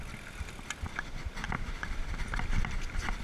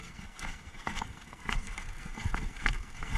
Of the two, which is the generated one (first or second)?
second